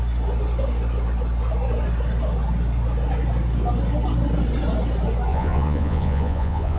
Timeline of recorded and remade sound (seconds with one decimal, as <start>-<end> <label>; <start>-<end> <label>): 0.0-5.3 recorded; 5.3-6.8 remade